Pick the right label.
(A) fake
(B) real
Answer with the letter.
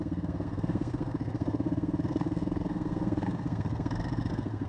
A